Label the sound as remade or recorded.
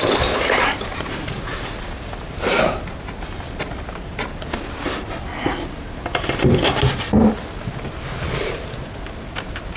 recorded